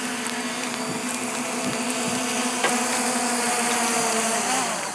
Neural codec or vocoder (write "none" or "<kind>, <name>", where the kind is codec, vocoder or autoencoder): none